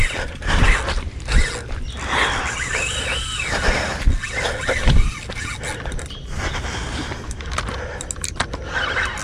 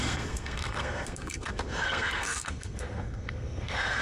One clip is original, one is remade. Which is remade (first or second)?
second